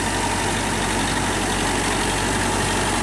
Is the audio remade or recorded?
recorded